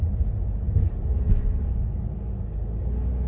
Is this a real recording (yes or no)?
yes